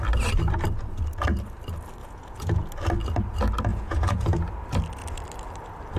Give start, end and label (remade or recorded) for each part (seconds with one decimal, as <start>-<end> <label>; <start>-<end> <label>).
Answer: 0.0-2.0 recorded; 2.0-2.7 remade; 2.7-3.7 recorded; 3.7-4.5 remade; 4.5-6.0 recorded